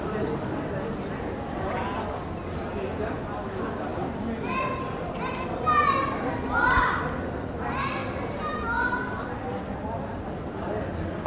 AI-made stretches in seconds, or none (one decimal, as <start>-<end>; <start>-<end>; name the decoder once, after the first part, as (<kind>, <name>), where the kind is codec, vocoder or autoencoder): none